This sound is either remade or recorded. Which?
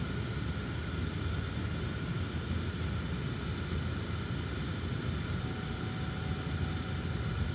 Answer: recorded